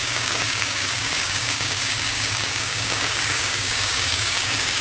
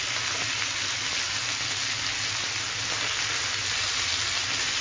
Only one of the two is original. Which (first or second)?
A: second